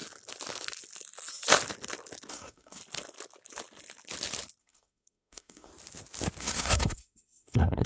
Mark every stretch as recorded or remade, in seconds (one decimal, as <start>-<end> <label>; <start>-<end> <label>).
0.0-2.3 recorded; 2.3-2.8 remade; 2.8-4.6 recorded; 4.6-5.7 remade; 5.7-6.4 recorded; 6.4-7.9 remade